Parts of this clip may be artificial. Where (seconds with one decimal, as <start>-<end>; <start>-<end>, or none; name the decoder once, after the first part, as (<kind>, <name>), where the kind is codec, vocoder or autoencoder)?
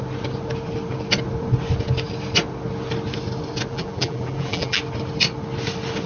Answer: 3.7-4.8 (vocoder, BigVGAN v2)